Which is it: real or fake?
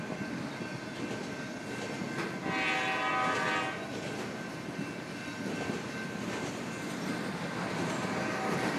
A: real